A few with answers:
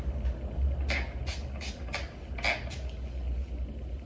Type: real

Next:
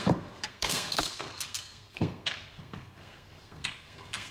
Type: fake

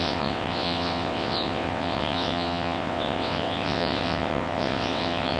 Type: fake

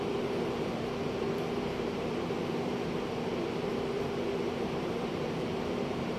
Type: fake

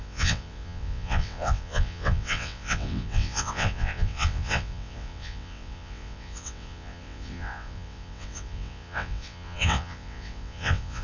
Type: fake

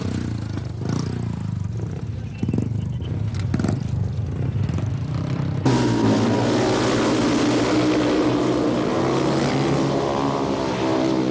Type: real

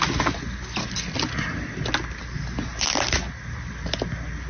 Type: real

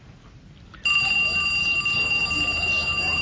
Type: real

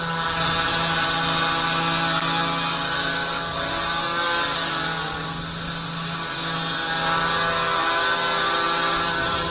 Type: real